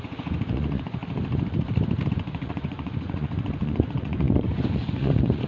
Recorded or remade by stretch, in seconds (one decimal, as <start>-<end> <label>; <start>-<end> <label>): 0.0-1.0 remade; 1.0-2.1 recorded; 2.1-5.5 remade

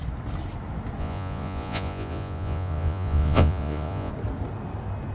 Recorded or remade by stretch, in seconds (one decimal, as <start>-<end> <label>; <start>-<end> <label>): 0.0-1.0 recorded; 1.0-4.1 remade; 4.1-5.1 recorded

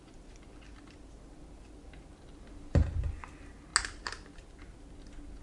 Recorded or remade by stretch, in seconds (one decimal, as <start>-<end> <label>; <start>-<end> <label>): 0.0-5.4 recorded

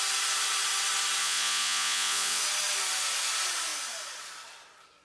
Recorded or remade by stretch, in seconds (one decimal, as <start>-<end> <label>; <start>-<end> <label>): 0.0-1.2 recorded; 1.2-2.4 remade; 2.4-5.0 recorded

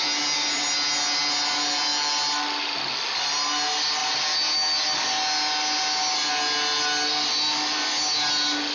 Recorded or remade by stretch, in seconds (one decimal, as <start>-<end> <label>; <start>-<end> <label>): 0.0-8.7 recorded

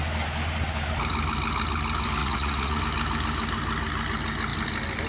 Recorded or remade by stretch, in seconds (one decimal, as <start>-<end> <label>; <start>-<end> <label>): 0.0-2.2 recorded; 2.2-2.8 remade; 2.8-5.1 recorded